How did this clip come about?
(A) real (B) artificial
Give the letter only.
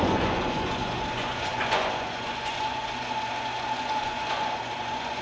B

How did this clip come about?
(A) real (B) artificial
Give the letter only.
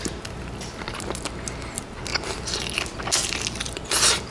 A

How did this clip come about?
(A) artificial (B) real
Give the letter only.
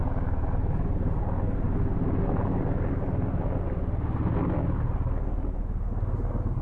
B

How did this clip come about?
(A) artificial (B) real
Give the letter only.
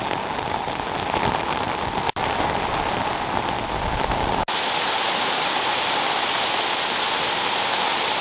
B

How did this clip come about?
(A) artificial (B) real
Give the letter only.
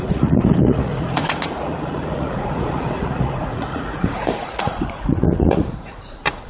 A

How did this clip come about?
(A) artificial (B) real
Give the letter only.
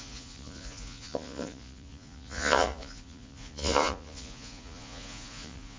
A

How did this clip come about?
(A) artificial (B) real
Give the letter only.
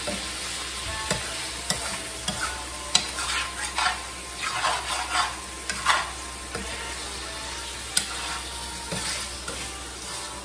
B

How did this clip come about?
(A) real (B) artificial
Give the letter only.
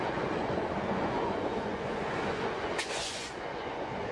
B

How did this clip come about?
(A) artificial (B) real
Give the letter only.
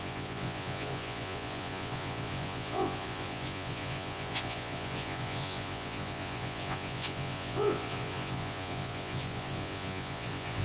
A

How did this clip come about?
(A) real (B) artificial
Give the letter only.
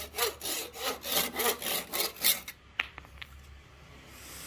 A